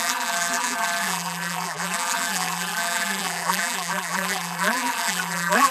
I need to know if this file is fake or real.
fake